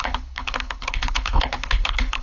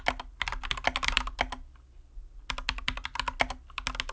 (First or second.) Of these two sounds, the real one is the second